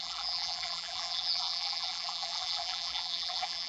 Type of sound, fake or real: fake